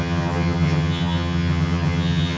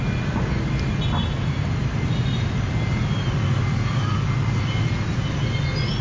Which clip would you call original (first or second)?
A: second